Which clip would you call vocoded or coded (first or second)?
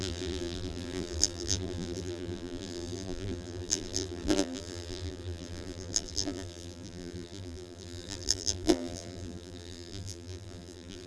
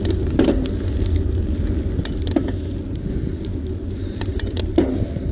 first